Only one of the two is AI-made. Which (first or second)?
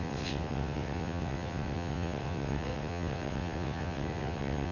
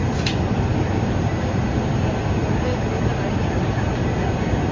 first